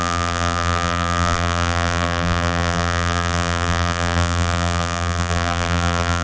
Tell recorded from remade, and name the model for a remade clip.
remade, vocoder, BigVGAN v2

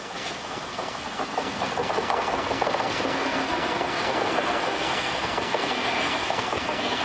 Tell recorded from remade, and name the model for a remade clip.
remade, codec, SNAC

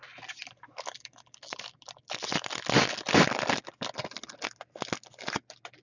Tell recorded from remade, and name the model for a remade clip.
recorded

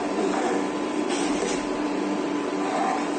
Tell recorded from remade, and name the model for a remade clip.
remade, vocoder, BigVGAN v2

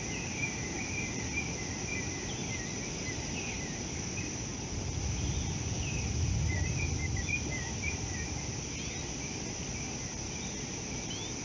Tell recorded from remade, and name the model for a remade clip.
recorded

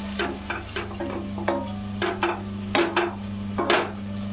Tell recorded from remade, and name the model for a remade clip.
recorded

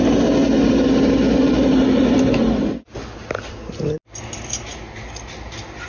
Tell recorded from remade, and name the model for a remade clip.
recorded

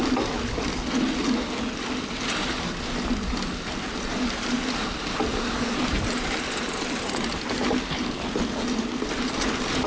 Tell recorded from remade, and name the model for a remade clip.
recorded